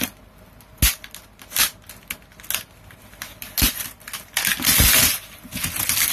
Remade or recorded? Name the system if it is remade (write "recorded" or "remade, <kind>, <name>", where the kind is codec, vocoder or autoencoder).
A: recorded